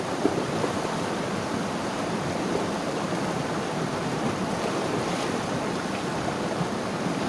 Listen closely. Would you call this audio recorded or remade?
remade